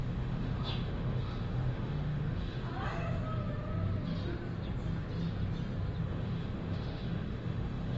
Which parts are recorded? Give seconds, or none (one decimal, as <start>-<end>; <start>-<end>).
2.7-6.0